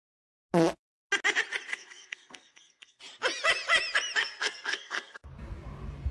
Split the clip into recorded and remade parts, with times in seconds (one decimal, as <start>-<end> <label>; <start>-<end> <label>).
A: 0.0-1.7 recorded; 1.7-3.0 remade; 3.0-4.2 recorded; 4.2-5.3 remade; 5.3-6.1 recorded